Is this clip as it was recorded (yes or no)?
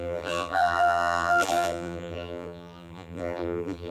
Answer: no